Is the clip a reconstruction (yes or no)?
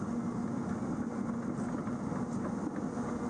no